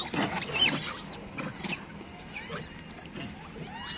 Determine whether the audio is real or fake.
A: real